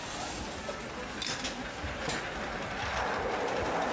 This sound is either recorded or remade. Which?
recorded